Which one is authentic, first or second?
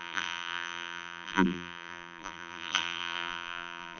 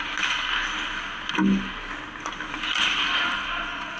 second